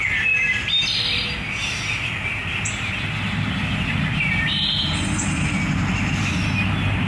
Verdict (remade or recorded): recorded